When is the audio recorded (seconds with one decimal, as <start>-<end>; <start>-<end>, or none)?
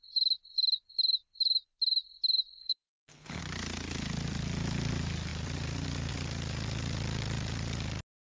0.0-2.6; 3.4-8.3